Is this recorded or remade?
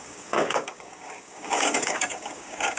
remade